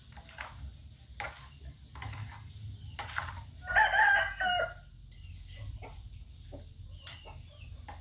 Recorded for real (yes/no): yes